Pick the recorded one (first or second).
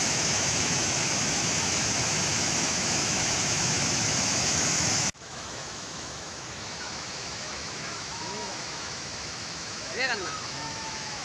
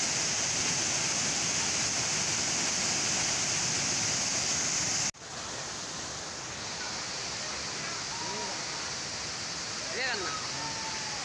second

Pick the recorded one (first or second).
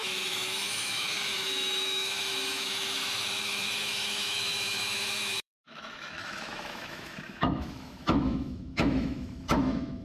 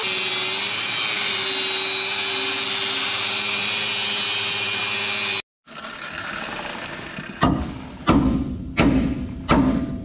second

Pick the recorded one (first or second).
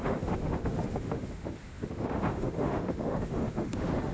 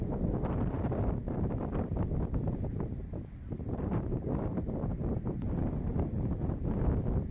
second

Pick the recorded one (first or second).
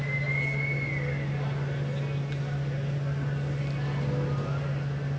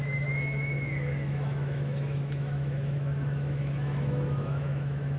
first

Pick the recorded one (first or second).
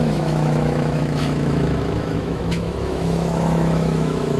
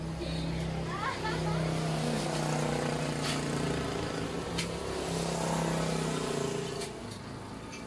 second